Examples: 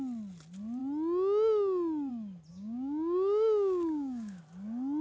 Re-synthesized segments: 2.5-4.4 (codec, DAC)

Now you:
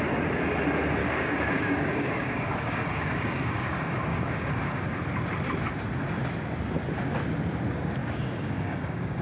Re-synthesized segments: 1.0-4.5 (codec, DAC); 8.0-9.2

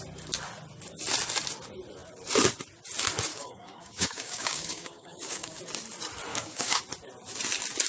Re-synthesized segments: 3.3-5.6 (codec, DAC); 6.3-6.8

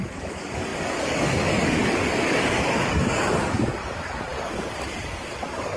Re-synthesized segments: 0.0-5.8 (codec, DAC)

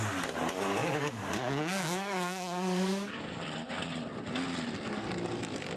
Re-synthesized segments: 0.8-3.4 (codec, DAC)

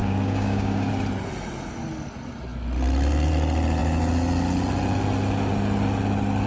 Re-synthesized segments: 0.0-0.9 (codec, DAC)